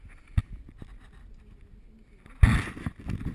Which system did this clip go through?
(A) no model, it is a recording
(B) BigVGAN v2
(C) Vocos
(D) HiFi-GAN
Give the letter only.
A